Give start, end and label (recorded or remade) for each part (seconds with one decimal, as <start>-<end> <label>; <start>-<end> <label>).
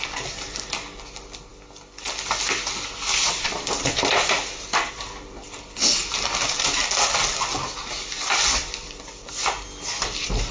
0.0-10.5 recorded